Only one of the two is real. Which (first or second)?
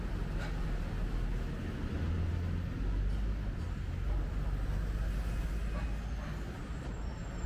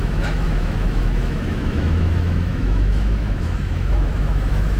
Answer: first